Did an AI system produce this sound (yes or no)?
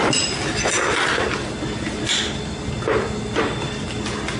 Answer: no